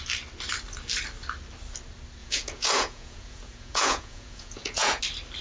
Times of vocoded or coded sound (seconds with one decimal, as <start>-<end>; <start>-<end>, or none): 2.2-5.0